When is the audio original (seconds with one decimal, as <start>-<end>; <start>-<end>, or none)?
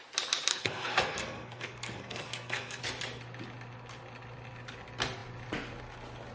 0.0-0.5; 2.8-6.3